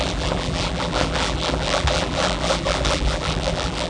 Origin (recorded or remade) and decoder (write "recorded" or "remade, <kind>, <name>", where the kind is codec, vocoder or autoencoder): remade, vocoder, BigVGAN v2